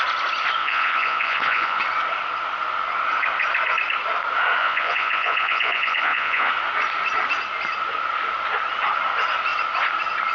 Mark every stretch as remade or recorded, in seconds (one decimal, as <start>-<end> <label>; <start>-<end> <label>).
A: 0.0-0.6 recorded; 0.6-1.8 remade; 1.8-4.6 recorded; 4.6-6.5 remade; 6.5-10.3 recorded